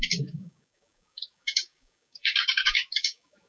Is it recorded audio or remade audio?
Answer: remade